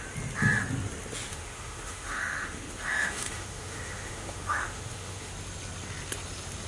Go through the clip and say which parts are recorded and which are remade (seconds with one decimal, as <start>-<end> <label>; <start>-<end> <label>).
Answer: 0.0-1.3 recorded; 1.3-5.3 remade; 5.3-6.7 recorded